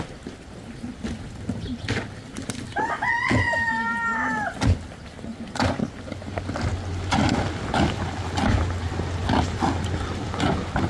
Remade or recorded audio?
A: recorded